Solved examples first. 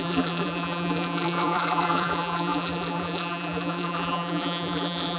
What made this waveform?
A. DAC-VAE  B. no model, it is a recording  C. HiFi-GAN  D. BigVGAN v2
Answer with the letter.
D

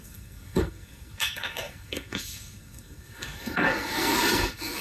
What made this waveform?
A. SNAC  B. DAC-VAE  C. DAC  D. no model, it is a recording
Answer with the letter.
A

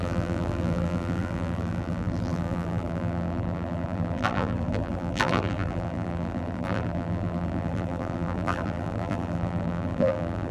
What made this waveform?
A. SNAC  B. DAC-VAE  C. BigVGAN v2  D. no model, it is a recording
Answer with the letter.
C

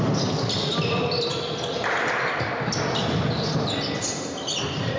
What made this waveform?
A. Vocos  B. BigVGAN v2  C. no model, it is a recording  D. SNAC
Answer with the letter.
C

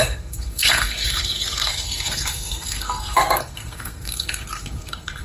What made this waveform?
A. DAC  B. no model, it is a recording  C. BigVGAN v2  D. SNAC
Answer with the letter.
D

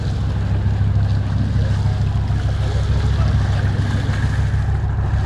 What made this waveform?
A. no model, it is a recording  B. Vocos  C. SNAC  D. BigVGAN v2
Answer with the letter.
A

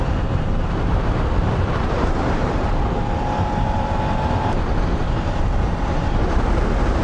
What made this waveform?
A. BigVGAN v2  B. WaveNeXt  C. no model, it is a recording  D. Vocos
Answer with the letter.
A